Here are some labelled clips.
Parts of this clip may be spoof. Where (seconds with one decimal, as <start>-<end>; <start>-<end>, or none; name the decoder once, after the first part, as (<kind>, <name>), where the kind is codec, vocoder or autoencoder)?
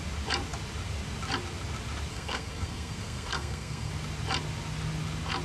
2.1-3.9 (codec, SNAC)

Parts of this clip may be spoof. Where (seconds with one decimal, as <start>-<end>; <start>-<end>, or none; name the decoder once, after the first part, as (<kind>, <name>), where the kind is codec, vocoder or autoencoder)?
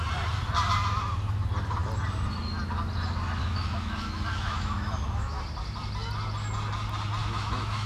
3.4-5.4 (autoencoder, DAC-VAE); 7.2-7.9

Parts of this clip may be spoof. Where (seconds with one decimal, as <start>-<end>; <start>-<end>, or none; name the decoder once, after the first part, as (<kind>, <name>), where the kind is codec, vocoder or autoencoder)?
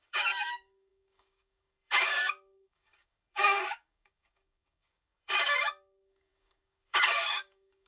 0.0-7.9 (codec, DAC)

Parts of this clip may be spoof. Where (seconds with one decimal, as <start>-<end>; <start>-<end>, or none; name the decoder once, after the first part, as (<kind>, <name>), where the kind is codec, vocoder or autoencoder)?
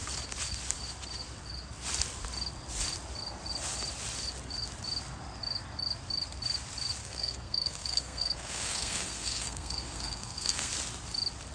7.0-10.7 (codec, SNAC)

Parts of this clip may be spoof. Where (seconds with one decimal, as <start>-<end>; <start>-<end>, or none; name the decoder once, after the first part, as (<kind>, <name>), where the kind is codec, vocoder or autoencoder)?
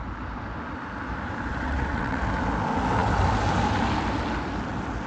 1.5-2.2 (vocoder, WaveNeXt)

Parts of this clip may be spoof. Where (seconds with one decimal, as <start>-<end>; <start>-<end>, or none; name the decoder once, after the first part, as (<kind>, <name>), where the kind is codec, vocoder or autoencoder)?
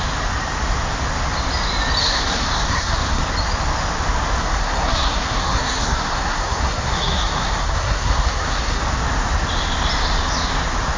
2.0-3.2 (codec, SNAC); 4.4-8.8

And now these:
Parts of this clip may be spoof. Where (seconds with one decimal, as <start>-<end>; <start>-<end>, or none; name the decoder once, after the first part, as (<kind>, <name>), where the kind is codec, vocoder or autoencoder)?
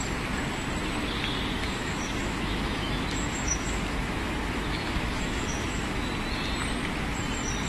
1.6-6.0 (autoencoder, DAC-VAE)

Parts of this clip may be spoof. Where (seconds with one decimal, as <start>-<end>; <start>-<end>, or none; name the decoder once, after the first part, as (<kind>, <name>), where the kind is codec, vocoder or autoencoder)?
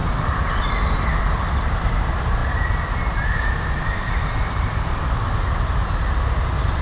none